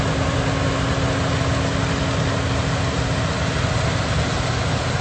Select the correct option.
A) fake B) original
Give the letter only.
B